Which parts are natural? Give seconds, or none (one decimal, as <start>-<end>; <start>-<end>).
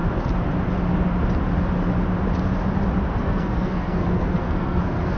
0.0-3.1